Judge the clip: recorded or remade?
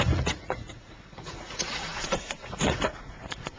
remade